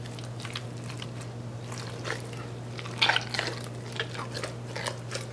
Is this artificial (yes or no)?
no